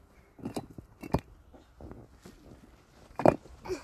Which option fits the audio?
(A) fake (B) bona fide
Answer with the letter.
B